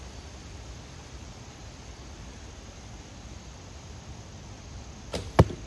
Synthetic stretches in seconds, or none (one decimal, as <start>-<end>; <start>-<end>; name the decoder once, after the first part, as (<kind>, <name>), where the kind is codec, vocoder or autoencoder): none